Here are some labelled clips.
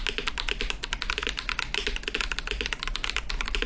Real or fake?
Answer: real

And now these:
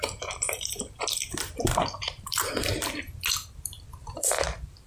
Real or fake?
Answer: fake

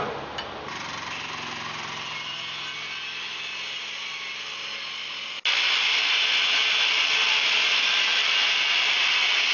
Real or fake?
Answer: real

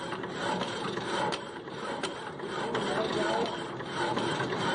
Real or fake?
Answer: fake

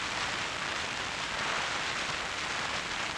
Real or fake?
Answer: real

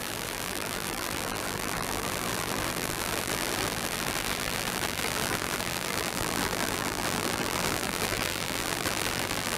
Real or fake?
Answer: fake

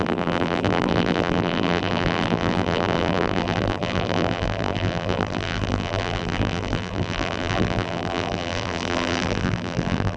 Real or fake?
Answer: fake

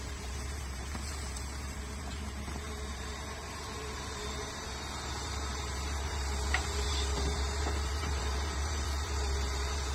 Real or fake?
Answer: fake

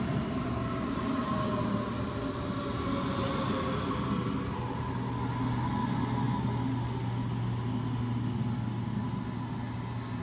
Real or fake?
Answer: real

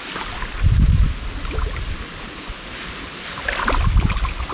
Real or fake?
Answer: real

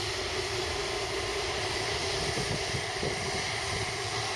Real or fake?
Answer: fake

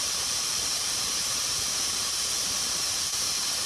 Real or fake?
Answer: fake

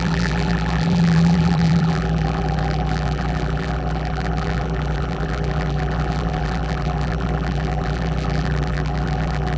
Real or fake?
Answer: fake